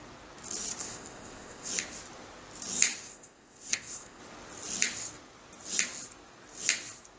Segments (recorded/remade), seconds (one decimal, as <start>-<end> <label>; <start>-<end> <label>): 0.0-0.8 recorded; 0.8-1.7 remade; 1.7-3.0 recorded; 3.0-4.2 remade; 4.2-7.2 recorded